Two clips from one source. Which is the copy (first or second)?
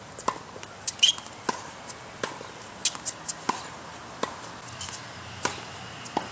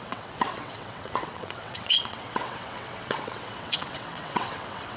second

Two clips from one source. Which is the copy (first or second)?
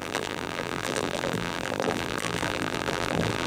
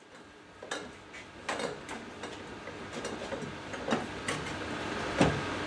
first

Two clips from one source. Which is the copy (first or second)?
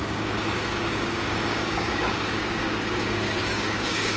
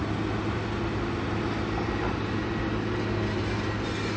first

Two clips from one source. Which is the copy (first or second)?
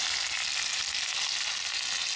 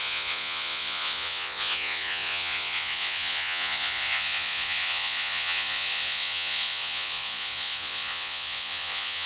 second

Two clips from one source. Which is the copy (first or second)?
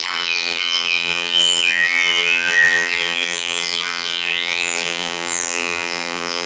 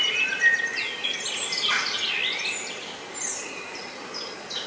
first